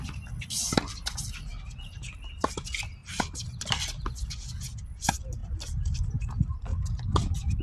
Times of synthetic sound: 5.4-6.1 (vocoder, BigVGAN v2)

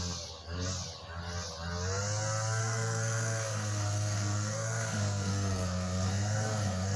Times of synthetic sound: 2.6-7.0 (codec, SNAC)